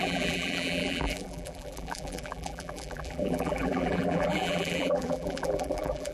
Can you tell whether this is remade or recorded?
remade